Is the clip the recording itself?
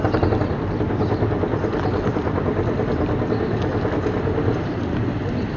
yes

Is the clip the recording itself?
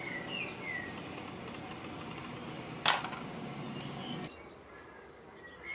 yes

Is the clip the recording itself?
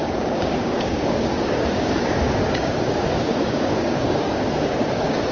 no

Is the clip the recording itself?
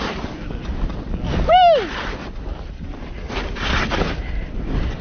yes